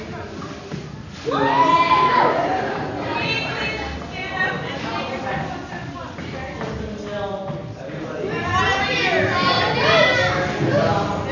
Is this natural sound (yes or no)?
yes